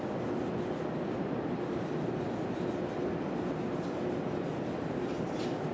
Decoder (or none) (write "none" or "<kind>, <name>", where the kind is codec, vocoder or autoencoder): none